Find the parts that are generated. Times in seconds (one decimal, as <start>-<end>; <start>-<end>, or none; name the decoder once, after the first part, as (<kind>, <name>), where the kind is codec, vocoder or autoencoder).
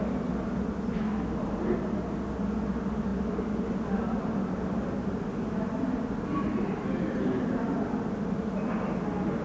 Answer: none